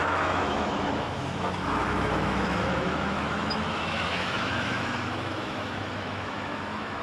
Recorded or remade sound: remade